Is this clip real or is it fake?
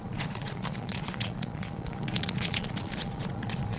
fake